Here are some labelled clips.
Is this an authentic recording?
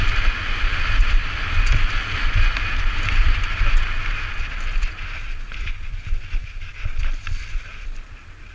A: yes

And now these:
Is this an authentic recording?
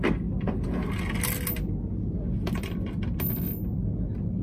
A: yes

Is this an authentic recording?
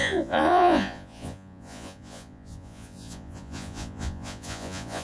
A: no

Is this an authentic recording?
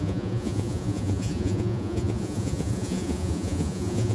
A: no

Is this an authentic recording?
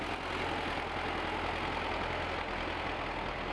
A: yes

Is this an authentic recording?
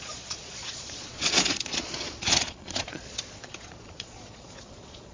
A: no